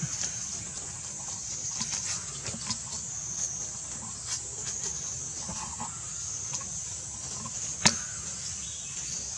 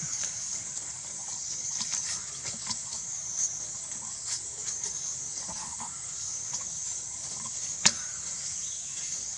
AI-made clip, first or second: second